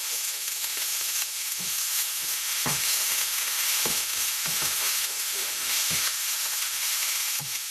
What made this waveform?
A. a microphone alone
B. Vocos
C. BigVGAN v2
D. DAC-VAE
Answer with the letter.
D